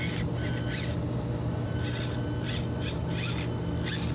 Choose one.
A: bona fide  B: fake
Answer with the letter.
A